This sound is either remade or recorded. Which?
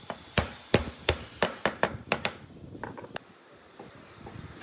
remade